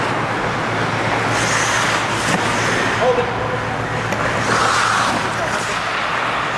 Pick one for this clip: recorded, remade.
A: recorded